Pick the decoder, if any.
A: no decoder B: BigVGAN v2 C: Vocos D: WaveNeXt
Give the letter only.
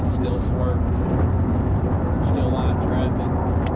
A